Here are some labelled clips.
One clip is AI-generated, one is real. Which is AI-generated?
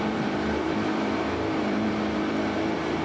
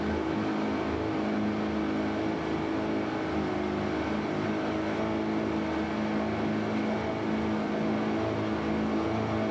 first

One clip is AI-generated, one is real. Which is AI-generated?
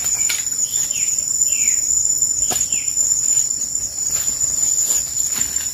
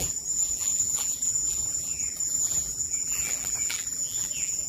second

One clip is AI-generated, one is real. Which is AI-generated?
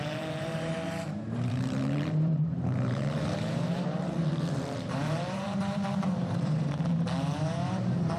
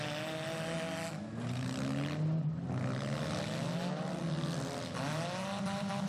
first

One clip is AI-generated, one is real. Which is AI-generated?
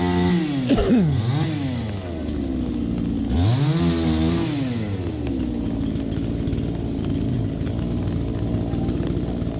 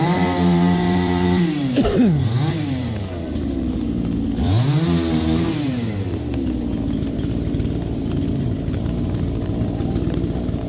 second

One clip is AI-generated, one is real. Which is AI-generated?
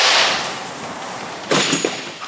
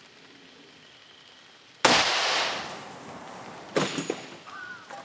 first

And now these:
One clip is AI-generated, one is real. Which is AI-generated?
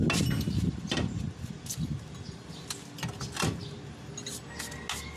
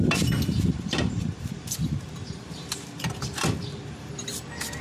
second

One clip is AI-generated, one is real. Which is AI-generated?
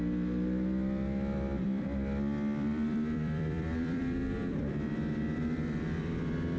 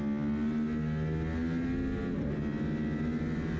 first